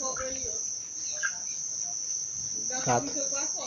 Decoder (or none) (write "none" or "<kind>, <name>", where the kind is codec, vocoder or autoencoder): none